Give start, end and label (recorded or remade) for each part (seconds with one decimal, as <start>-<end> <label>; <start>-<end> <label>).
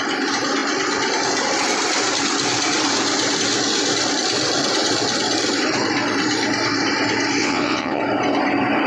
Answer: 0.0-7.4 recorded; 7.4-8.0 remade; 8.0-8.9 recorded